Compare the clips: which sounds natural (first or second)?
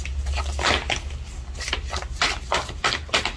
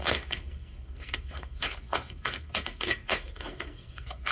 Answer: first